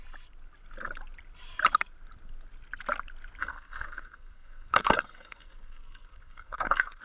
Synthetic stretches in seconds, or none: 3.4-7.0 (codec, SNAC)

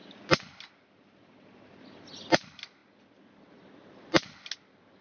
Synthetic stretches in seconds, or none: none

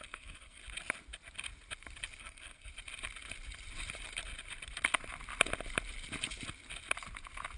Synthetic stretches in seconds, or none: 0.0-0.6 (codec, SNAC); 2.2-2.7

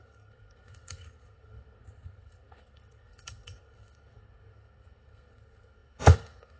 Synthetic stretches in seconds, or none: 0.0-6.6 (codec, SNAC)